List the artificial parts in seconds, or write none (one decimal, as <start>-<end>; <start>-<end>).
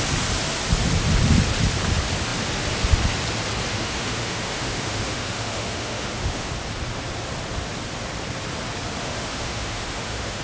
3.7-6.5; 9.0-10.4